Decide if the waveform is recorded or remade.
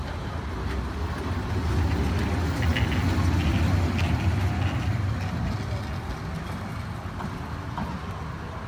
recorded